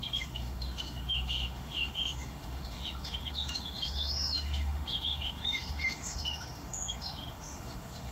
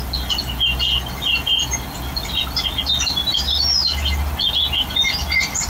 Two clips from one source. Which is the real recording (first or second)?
second